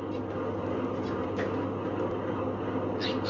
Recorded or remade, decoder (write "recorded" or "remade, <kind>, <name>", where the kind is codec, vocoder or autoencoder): recorded